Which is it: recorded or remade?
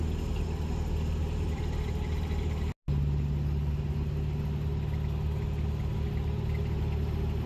recorded